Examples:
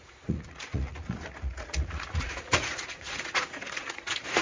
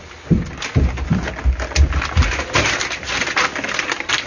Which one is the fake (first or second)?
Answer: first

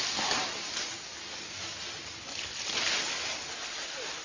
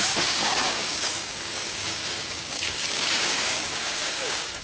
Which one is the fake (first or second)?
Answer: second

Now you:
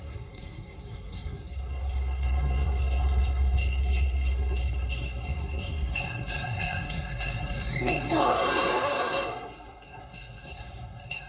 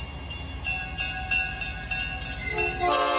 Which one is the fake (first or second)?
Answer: first